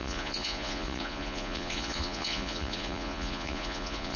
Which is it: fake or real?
fake